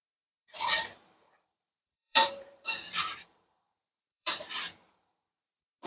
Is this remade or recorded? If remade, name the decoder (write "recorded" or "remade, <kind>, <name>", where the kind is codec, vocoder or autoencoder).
remade, vocoder, BigVGAN v2